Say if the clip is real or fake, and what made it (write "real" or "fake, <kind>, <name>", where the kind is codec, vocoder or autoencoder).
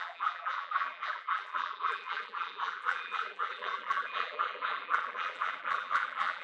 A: fake, vocoder, BigVGAN v2